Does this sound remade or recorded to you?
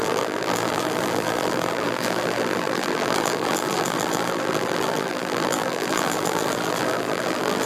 remade